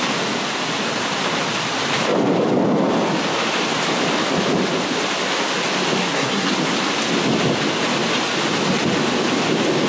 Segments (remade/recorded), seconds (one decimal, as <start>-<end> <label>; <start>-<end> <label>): 0.0-6.0 recorded; 6.0-6.5 remade; 6.5-9.9 recorded